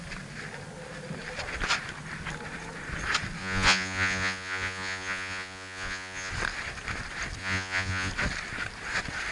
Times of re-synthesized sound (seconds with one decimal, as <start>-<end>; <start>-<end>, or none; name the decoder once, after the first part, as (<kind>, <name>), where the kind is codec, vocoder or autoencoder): 3.4-6.3 (vocoder, Vocos); 7.4-8.1